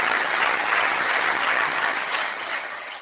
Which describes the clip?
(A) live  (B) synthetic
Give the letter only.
B